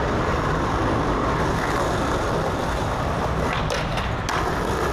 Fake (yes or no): no